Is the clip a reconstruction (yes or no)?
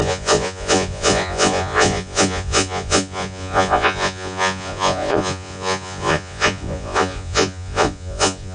yes